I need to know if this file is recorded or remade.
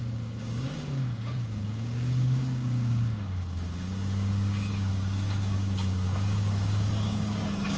remade